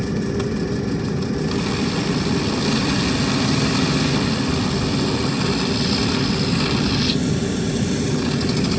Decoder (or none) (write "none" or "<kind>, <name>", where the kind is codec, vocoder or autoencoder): none